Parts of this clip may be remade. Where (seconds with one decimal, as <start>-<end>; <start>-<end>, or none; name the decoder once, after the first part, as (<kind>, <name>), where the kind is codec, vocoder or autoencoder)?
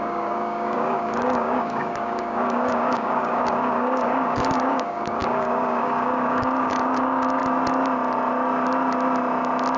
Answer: 0.0-7.4 (codec, DAC)